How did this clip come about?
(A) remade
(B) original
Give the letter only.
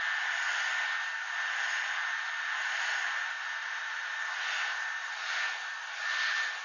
B